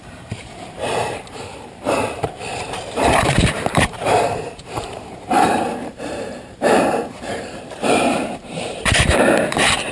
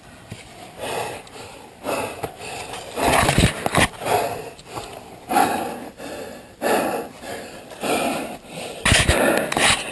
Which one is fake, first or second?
first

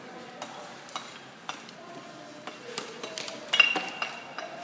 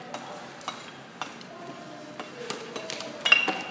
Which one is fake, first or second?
first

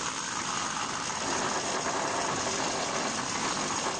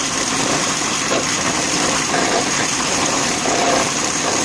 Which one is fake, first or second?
second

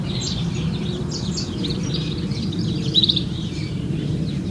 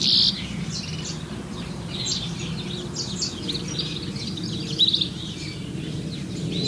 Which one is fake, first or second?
first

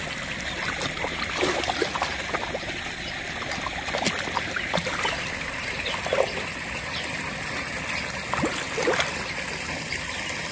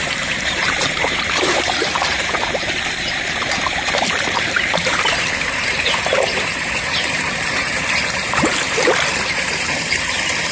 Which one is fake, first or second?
second